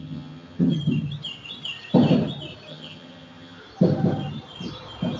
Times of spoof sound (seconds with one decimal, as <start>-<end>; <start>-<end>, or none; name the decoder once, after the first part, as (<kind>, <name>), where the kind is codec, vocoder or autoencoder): 0.0-0.7 (vocoder, HiFi-GAN); 2.7-3.6